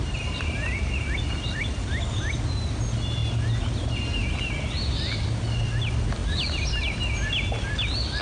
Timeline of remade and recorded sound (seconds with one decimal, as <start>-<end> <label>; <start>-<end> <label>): 0.0-8.2 recorded